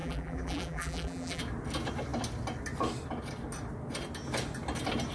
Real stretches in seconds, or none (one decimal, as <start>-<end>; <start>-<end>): 1.4-5.1